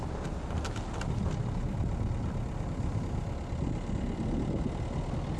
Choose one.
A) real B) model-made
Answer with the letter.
A